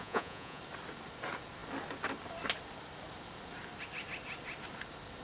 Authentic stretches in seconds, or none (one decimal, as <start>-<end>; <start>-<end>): 0.6-5.2